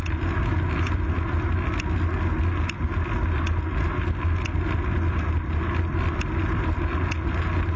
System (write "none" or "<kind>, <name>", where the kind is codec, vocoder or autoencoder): none